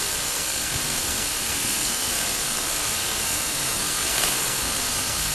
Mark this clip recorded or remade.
remade